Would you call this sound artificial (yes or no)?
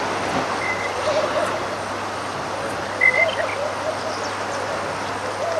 no